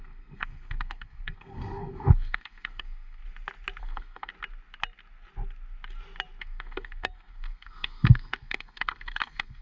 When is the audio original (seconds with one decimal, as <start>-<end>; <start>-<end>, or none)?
3.2-3.8; 4.3-6.4